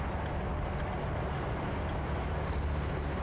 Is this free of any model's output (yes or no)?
yes